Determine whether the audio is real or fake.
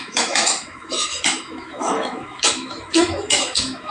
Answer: fake